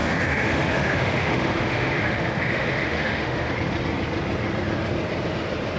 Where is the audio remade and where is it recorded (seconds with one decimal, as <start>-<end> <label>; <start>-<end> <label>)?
0.0-3.5 remade; 3.5-5.8 recorded